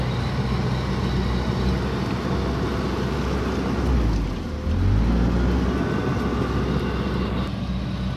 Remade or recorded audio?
recorded